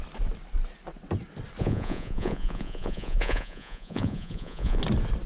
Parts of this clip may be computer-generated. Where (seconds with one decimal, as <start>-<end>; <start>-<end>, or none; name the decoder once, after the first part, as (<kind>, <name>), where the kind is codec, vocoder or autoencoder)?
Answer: 1.6-4.8 (vocoder, Vocos)